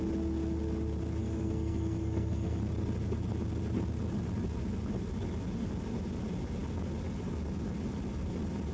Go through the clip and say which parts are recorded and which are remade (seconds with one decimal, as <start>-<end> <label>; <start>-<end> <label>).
0.0-1.2 recorded; 1.2-2.6 remade; 2.6-8.7 recorded